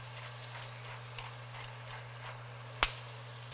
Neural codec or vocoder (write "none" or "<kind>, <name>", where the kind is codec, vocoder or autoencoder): none